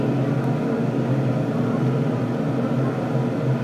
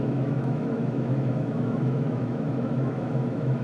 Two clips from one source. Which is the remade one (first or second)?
second